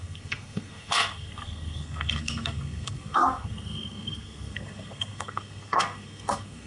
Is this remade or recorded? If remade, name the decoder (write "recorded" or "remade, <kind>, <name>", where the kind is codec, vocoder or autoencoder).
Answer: remade, codec, SNAC